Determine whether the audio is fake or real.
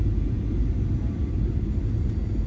real